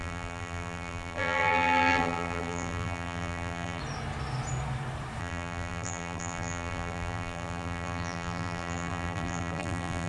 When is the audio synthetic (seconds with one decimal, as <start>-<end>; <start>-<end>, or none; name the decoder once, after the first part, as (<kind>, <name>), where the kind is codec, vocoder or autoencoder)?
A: 0.0-3.8 (vocoder, BigVGAN v2); 5.2-10.1